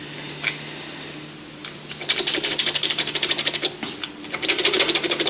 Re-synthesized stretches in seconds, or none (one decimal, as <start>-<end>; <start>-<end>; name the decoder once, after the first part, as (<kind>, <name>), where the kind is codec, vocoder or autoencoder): none